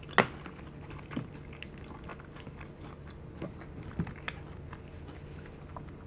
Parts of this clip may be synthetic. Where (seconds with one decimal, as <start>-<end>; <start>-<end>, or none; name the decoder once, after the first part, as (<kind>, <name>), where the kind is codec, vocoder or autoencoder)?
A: none